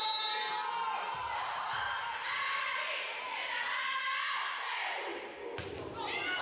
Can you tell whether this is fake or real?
real